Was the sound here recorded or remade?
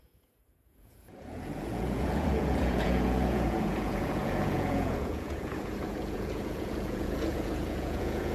remade